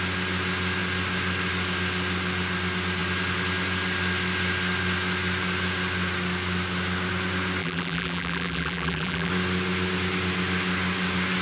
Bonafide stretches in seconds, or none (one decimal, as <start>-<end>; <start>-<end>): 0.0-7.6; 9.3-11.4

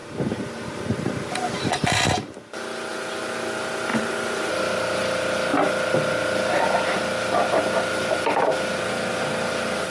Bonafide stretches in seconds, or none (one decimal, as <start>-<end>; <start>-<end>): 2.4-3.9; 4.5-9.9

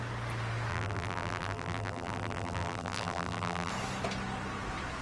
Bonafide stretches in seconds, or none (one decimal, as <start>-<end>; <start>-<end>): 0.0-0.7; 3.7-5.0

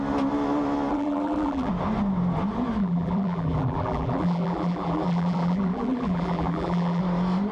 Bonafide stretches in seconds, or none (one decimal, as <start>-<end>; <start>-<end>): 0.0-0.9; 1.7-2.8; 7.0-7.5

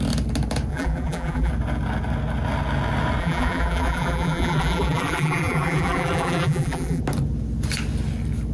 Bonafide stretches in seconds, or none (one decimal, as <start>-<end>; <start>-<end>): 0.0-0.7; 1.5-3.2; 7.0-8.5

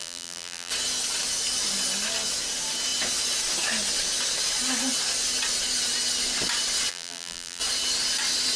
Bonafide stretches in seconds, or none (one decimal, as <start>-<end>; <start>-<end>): 0.7-6.9; 7.6-8.6

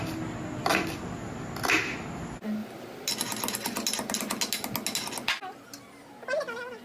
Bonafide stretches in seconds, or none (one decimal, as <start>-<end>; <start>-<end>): 0.0-6.8

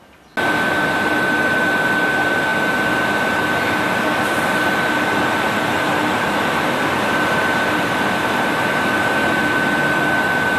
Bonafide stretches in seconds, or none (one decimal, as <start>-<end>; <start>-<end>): 0.0-5.7; 9.3-10.6